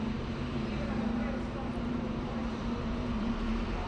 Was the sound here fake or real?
fake